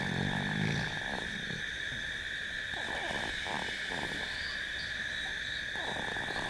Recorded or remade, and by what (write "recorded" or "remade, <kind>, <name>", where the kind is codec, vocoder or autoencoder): remade, vocoder, BigVGAN v2